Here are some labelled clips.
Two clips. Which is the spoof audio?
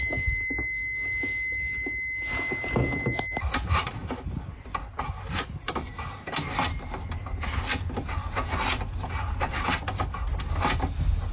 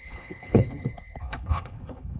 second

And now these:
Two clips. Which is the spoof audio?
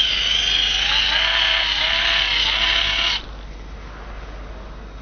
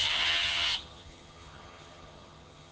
second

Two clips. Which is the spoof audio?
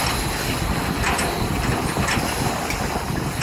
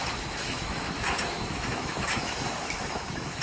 second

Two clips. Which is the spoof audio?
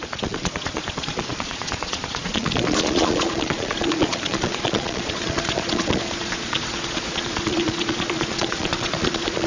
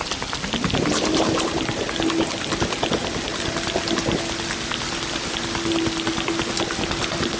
first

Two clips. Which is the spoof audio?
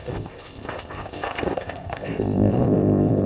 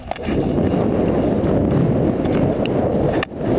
first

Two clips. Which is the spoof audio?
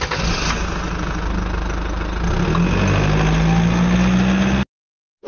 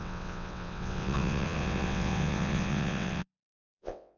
second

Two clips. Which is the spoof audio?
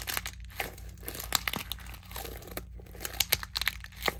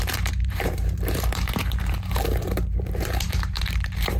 second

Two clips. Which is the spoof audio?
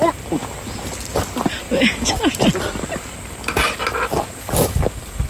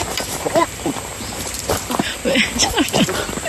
second